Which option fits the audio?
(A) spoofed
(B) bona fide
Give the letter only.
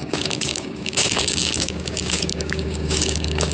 A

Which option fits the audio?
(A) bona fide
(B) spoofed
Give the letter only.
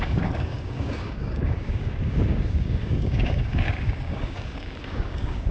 B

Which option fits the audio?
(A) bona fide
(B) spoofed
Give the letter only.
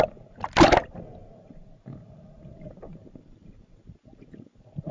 A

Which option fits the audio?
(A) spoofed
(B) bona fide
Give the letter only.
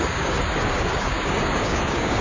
A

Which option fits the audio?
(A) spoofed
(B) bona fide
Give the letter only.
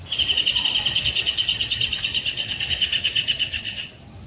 B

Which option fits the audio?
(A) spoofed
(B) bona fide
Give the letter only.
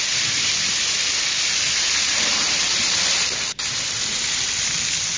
B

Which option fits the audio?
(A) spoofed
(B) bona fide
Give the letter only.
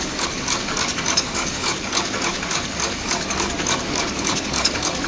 A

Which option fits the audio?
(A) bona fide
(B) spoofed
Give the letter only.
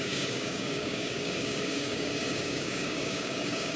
B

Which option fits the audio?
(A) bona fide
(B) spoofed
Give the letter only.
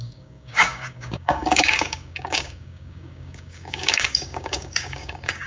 B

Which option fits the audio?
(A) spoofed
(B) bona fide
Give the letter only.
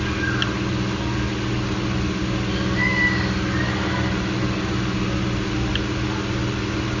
B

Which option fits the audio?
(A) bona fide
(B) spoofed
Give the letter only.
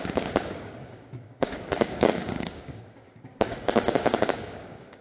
B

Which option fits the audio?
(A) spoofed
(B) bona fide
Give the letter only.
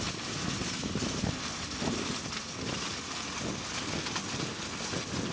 B